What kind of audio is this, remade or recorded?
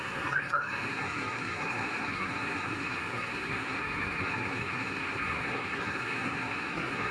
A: remade